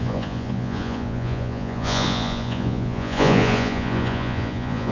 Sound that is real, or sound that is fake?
fake